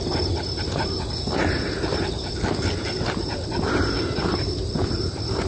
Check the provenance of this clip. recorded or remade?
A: recorded